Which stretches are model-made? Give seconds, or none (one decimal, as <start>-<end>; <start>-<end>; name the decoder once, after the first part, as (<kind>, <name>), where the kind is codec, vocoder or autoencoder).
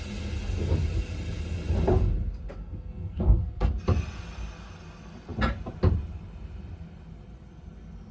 2.6-3.7 (codec, SNAC)